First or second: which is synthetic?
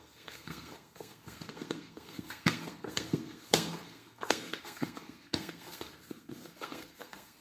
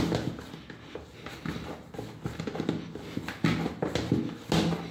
first